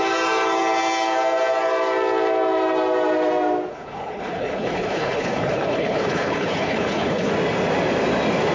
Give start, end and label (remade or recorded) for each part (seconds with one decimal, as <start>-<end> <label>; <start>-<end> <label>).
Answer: 0.0-3.7 recorded; 3.7-7.3 remade; 7.3-8.5 recorded

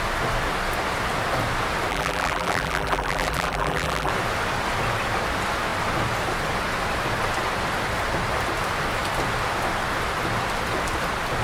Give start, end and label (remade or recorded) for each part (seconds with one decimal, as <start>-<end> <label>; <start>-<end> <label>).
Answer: 0.0-1.9 recorded; 1.9-4.1 remade; 4.1-11.4 recorded